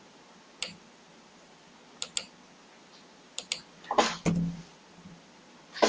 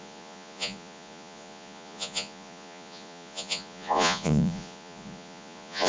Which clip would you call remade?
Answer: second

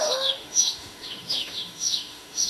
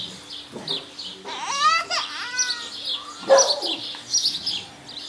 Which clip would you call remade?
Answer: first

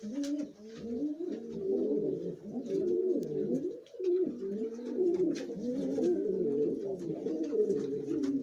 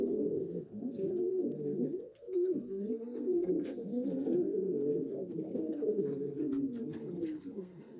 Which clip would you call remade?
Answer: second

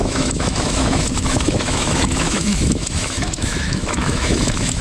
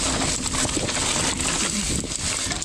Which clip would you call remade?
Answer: first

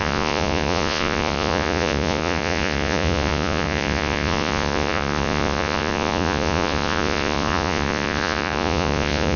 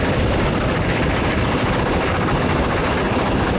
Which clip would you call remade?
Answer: first